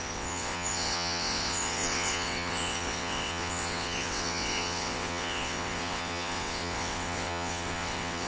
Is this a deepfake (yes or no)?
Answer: yes